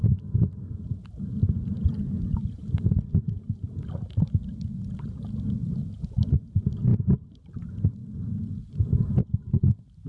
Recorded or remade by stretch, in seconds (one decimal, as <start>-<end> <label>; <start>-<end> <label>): 0.0-5.6 recorded; 5.6-6.4 remade; 6.4-6.9 recorded; 6.9-7.5 remade; 7.5-8.0 recorded; 8.0-8.6 remade; 8.6-10.1 recorded